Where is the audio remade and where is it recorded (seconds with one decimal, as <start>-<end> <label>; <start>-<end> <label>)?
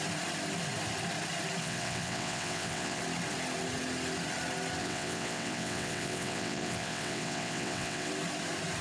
0.0-1.6 recorded; 1.6-3.0 remade; 3.0-4.8 recorded; 4.8-8.1 remade; 8.1-8.8 recorded